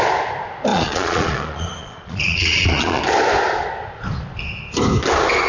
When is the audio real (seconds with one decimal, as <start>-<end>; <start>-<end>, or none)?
0.0-0.7; 3.0-5.5

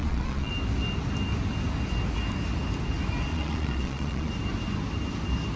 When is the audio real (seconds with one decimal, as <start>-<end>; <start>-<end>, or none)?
0.5-3.3; 4.3-5.6

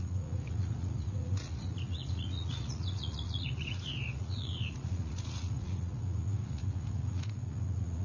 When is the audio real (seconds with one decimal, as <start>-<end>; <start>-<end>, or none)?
none

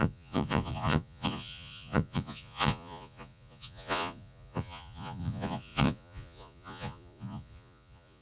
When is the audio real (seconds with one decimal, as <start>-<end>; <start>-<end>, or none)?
none